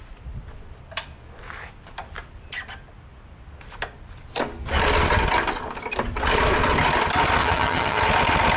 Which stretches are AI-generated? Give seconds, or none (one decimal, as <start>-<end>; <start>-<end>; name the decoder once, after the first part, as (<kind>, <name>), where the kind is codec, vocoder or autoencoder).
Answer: 7.4-8.0 (vocoder, HiFi-GAN)